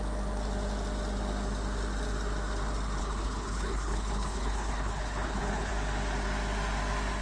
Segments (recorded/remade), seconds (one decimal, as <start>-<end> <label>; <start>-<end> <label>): 0.0-3.0 recorded; 3.0-5.7 remade; 5.7-7.2 recorded